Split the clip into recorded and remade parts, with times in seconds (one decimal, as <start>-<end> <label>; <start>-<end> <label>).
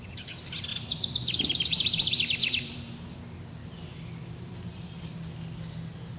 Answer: 0.0-0.7 recorded; 0.7-1.3 remade; 1.3-2.4 recorded; 2.4-3.2 remade; 3.2-3.6 recorded; 3.6-5.2 remade; 5.2-6.2 recorded